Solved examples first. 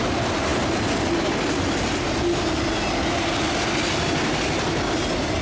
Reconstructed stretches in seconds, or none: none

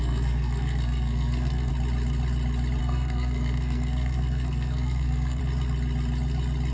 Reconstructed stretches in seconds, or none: 0.0-1.7 (codec, SNAC); 2.8-5.4

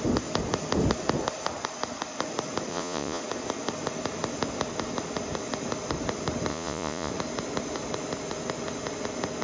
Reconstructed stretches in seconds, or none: 2.7-3.2 (vocoder, Vocos); 6.5-7.1

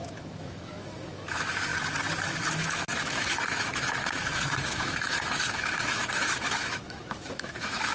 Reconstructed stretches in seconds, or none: 0.0-1.7 (autoencoder, DAC-VAE); 2.3-7.9

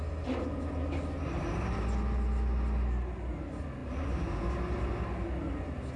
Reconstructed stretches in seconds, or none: none